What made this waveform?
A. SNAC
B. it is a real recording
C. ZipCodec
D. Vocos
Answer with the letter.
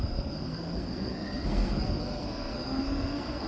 A